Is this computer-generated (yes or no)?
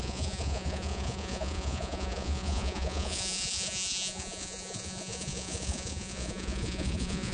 yes